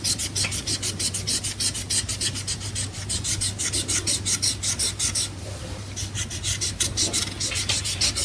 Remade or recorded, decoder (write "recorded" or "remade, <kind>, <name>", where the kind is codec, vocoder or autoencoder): recorded